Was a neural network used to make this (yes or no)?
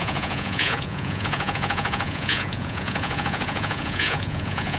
yes